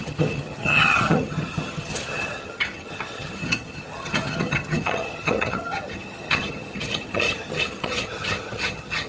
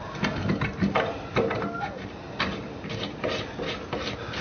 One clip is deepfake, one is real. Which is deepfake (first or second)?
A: first